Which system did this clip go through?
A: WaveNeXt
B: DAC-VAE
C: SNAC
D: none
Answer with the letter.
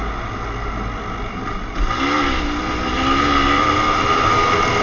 D